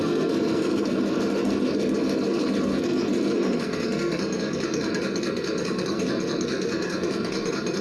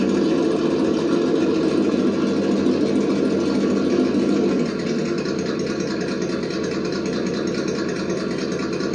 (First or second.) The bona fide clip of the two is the second